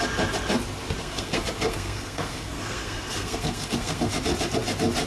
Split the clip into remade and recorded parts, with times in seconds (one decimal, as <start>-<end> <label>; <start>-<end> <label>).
0.0-1.0 recorded; 1.0-4.1 remade; 4.1-5.1 recorded